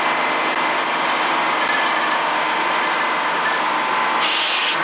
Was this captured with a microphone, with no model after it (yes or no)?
yes